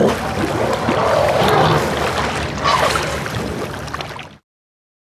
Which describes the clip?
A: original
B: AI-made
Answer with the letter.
A